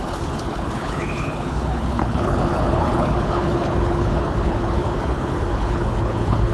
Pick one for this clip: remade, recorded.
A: remade